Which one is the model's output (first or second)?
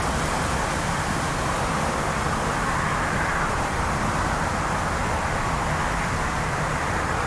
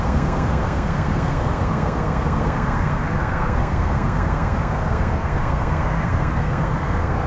second